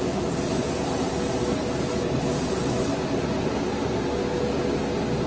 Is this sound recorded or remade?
recorded